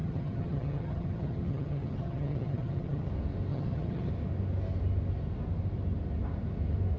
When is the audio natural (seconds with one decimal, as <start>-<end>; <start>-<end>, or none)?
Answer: 3.1-3.5; 4.1-7.0